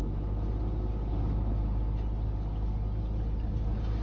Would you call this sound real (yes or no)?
yes